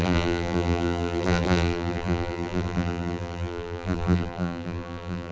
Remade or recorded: remade